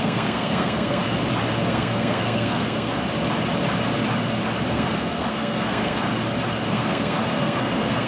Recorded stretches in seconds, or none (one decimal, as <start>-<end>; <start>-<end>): 1.0-1.7; 2.9-4.7; 6.1-6.7